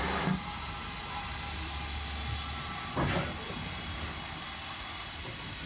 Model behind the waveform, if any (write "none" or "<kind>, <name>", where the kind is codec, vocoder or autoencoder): none